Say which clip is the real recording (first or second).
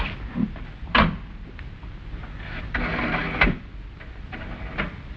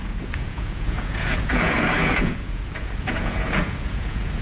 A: first